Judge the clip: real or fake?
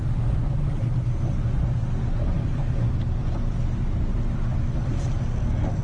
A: real